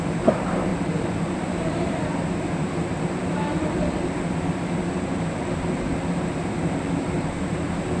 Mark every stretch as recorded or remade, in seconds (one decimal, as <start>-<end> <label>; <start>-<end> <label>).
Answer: 0.0-8.0 remade